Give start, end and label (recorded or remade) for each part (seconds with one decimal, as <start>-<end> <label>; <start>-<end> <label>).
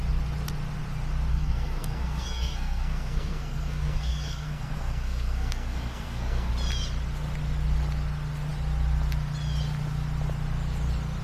0.0-1.3 recorded; 1.3-6.5 remade; 6.5-11.2 recorded